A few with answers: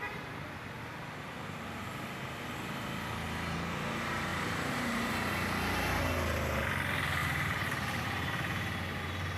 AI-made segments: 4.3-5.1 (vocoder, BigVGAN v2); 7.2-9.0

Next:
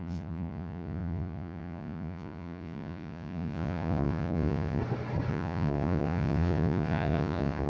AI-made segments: 0.0-4.8 (vocoder, Vocos); 5.3-7.7